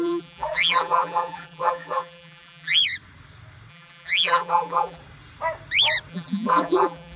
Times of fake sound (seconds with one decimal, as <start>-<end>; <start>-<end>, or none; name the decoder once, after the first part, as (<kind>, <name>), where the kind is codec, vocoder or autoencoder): 0.0-2.8 (vocoder, BigVGAN v2); 3.7-5.0; 6.1-7.2